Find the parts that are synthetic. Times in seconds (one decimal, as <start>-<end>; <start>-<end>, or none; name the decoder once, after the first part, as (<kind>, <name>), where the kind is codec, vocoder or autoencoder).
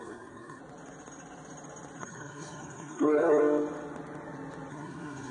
0.0-0.6 (codec, SNAC); 2.0-3.4; 4.7-5.3